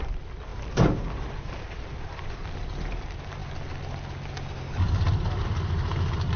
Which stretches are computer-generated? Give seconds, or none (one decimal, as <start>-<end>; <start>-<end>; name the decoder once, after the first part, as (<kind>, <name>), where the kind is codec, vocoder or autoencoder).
0.0-3.4 (vocoder, BigVGAN v2); 4.6-6.4